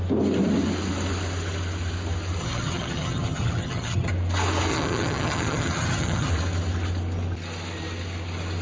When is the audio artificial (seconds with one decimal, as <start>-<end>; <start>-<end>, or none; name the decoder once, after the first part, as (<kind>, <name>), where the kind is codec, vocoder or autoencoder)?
2.4-4.1 (vocoder, HiFi-GAN); 4.7-6.3